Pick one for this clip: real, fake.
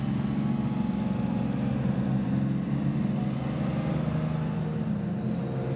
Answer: real